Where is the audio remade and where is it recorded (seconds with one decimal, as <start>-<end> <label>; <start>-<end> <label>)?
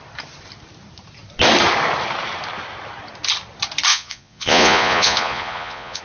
0.0-3.9 recorded; 3.9-6.0 remade